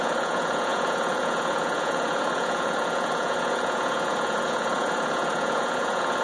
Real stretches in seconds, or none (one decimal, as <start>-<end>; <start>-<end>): none

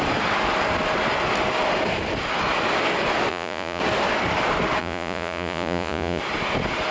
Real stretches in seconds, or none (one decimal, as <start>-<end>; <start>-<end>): 0.0-3.3; 3.8-4.8; 6.2-6.9

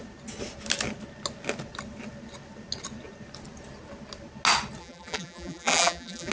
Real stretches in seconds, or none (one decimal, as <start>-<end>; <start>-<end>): 0.0-4.8

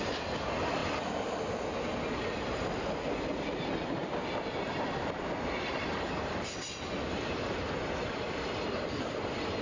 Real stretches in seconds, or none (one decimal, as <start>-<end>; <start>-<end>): 0.0-9.6

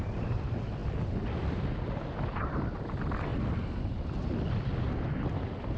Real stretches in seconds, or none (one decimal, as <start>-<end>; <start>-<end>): 0.0-5.8

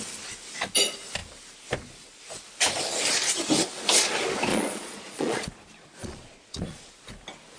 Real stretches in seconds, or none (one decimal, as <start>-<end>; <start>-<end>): 0.0-4.5; 5.5-6.0; 6.9-7.6